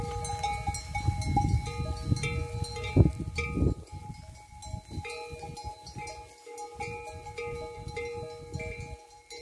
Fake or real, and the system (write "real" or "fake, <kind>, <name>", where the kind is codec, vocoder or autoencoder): real